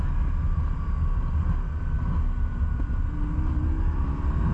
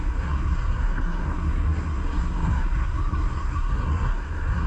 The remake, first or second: second